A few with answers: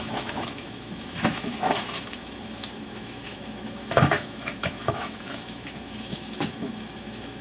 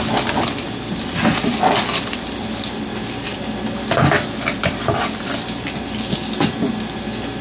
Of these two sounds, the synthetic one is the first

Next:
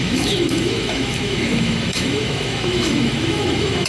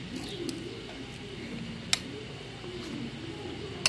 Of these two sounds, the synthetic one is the first